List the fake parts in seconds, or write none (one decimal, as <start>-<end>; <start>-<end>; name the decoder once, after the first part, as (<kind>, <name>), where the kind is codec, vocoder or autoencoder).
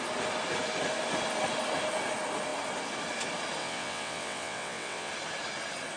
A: 3.6-5.1 (vocoder, WaveNeXt)